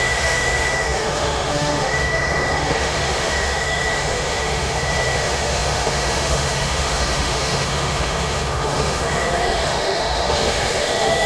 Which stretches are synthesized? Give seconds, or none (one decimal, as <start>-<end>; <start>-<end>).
0.0-11.3